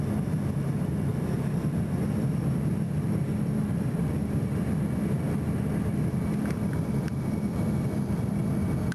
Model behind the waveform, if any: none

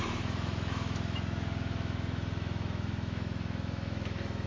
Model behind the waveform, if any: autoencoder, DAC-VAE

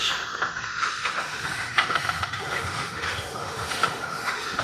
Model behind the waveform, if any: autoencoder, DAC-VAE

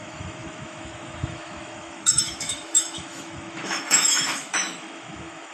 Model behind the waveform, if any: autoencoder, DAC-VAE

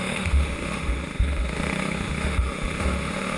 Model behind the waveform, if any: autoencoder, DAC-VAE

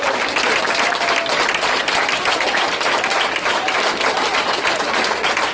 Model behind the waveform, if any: none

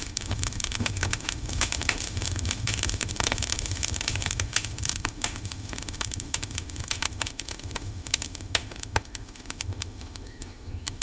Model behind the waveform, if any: autoencoder, DAC-VAE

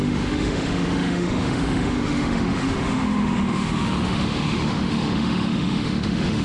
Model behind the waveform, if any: autoencoder, DAC-VAE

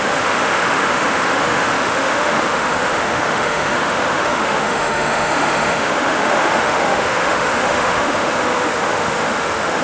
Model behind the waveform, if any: autoencoder, DAC-VAE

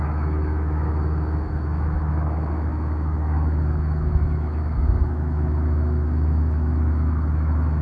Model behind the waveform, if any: autoencoder, DAC-VAE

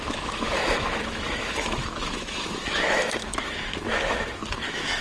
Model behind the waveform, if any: autoencoder, DAC-VAE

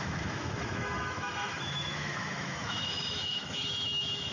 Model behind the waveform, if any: autoencoder, DAC-VAE